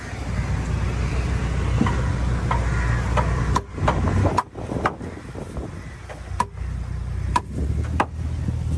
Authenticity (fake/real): real